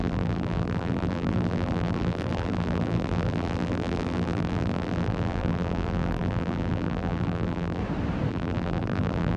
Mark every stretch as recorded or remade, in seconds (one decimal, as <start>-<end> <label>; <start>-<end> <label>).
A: 0.0-7.8 remade; 7.8-8.3 recorded; 8.3-9.4 remade